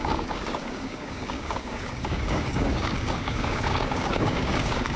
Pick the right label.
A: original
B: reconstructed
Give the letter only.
B